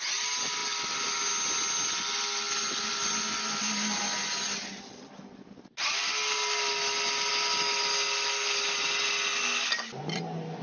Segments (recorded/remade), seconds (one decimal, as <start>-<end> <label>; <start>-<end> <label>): 0.0-10.6 recorded

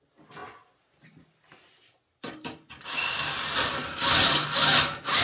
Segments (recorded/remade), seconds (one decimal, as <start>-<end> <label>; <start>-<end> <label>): 0.0-5.2 recorded

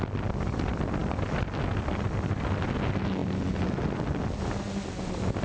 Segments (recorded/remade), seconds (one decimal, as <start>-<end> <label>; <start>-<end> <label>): 0.0-5.4 recorded

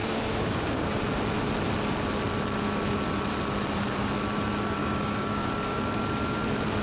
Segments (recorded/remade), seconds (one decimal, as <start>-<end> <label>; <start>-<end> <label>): 0.0-1.0 remade; 1.0-4.8 recorded; 4.8-5.8 remade; 5.8-6.8 recorded